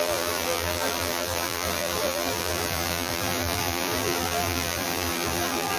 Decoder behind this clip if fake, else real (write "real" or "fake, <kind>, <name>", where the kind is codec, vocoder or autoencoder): fake, vocoder, BigVGAN v2